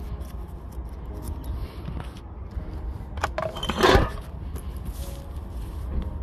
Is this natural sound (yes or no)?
yes